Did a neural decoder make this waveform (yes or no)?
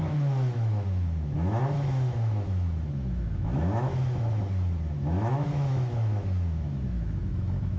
yes